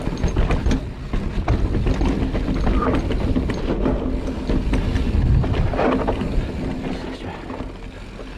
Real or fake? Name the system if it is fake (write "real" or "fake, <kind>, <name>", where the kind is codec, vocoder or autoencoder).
real